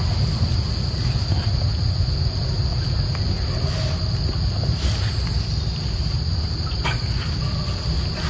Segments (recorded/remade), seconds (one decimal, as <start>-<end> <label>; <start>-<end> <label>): 0.0-1.7 recorded; 1.7-2.3 remade; 2.3-8.3 recorded